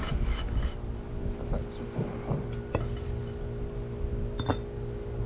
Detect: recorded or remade recorded